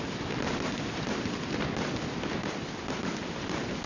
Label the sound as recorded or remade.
recorded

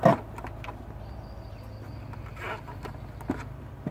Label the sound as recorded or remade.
recorded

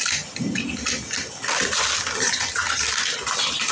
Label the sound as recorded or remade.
recorded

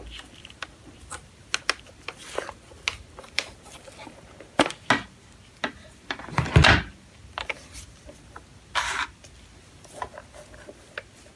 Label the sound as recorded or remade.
recorded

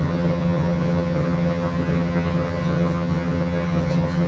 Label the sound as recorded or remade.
remade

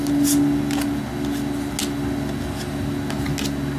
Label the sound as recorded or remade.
recorded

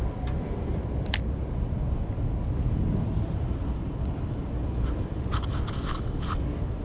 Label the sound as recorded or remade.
recorded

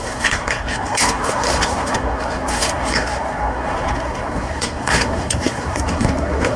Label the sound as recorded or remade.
remade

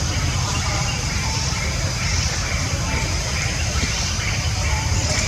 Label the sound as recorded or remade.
remade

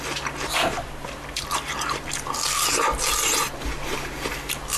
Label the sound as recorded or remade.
recorded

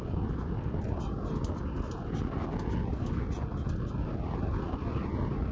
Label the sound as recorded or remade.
recorded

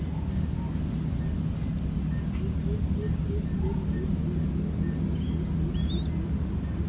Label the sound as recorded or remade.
recorded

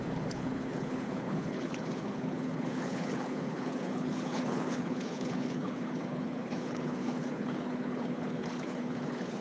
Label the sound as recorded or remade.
remade